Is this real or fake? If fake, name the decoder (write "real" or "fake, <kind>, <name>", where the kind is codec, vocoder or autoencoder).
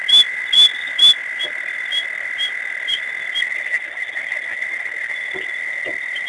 real